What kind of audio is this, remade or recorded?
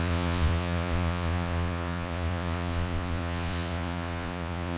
remade